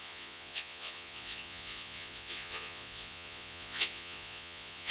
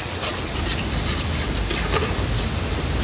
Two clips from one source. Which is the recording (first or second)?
second